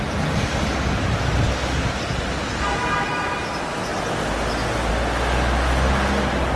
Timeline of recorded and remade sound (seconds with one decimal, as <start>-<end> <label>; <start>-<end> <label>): 0.0-6.6 recorded